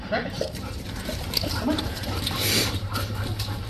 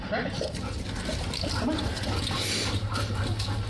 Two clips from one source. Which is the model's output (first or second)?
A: first